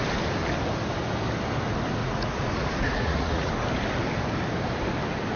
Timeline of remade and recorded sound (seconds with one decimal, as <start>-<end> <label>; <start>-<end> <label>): 0.0-2.0 recorded; 2.0-3.5 remade; 3.5-5.4 recorded